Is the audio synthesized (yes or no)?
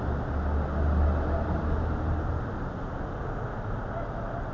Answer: no